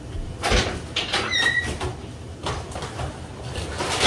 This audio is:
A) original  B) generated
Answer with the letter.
A